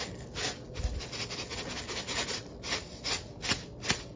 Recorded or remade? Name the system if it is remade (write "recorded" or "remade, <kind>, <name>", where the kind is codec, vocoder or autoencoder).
recorded